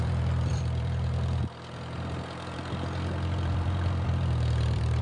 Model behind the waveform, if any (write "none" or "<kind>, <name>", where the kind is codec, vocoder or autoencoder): vocoder, BigVGAN v2